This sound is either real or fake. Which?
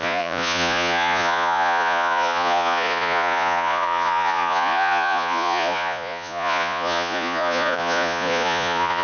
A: fake